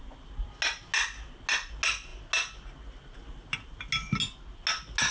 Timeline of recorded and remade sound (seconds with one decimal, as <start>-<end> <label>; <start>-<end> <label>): 0.0-5.1 recorded